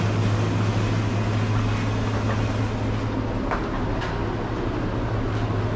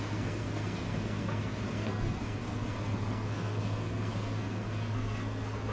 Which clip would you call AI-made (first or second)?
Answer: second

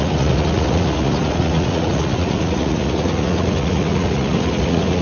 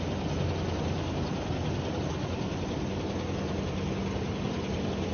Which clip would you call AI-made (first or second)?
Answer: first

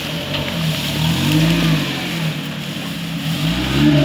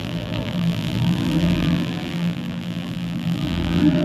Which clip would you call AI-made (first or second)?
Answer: second